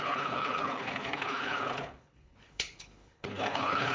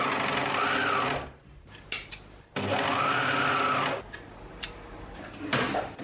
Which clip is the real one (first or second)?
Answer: second